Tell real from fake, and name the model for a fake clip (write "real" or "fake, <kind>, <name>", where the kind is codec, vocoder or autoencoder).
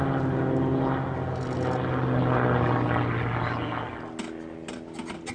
real